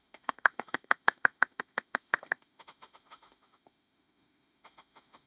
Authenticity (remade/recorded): remade